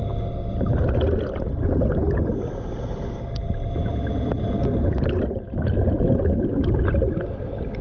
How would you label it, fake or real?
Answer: real